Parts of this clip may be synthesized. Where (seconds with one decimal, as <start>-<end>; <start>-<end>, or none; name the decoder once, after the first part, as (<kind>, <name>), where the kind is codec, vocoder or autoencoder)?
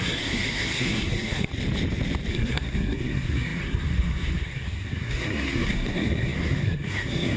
0.0-1.5 (codec, SNAC); 2.3-7.4